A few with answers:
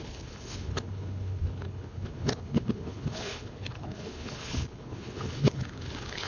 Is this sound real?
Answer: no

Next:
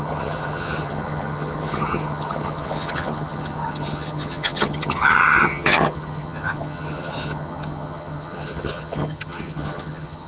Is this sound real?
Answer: no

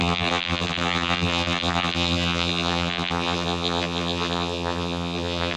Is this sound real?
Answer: no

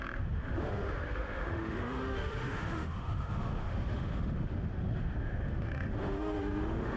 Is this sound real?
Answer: no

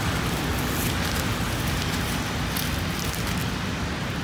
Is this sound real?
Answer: yes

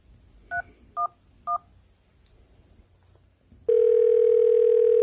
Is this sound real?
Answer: yes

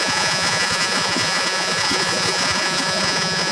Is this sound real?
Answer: no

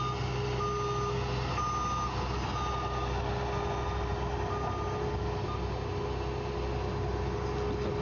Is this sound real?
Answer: yes